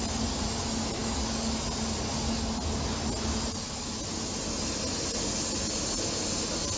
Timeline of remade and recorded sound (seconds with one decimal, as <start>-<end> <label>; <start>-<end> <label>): 0.0-6.8 recorded